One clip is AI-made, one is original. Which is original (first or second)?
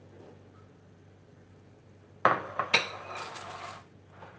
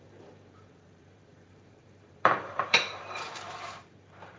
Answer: first